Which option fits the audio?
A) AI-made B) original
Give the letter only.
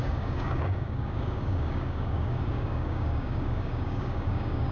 A